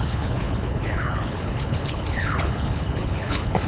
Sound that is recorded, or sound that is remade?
remade